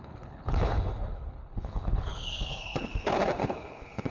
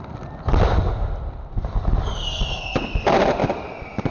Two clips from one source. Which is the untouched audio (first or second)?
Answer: second